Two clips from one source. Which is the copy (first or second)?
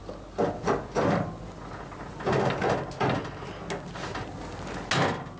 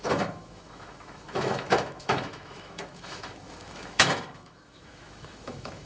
second